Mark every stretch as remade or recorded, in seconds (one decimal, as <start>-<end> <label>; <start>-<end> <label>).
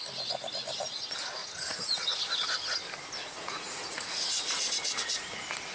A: 0.0-1.4 recorded; 1.4-2.0 remade; 2.0-3.2 recorded; 3.2-4.7 remade; 4.7-5.7 recorded